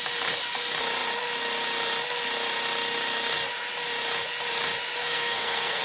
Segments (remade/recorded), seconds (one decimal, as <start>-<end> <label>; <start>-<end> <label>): 0.0-5.0 recorded; 5.0-5.8 remade